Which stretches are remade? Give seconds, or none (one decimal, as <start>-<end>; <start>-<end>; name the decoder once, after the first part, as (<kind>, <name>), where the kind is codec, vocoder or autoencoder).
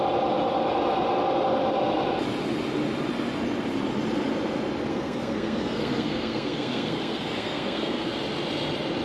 4.9-8.1 (codec, SNAC)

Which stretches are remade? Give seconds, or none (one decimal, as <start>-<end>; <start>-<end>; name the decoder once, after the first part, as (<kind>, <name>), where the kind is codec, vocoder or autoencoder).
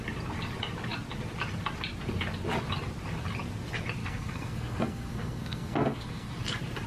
4.0-6.3 (codec, SNAC)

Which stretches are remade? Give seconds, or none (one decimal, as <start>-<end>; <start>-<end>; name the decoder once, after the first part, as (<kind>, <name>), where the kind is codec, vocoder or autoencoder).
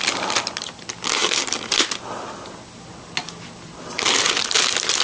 none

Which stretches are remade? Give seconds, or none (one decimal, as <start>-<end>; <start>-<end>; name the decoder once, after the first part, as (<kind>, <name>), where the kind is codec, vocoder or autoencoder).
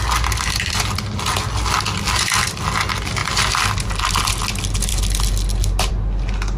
none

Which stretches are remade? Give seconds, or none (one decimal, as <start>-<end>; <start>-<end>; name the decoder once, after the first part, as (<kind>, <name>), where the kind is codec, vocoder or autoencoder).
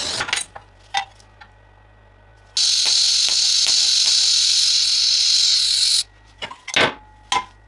none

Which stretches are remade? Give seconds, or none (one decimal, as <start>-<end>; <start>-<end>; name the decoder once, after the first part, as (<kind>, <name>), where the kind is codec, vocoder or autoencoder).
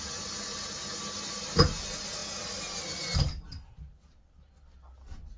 none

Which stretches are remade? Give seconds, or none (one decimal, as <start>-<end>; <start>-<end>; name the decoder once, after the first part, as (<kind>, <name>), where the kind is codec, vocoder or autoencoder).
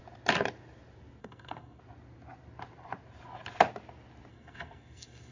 1.2-1.8 (codec, SNAC); 4.3-5.3